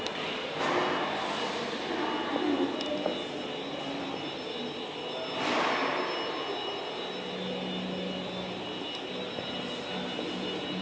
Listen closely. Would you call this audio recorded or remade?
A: recorded